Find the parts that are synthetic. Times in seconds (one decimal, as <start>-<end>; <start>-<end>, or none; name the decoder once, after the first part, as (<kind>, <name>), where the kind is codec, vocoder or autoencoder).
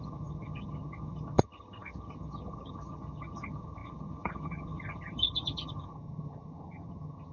0.0-7.3 (vocoder, HiFi-GAN)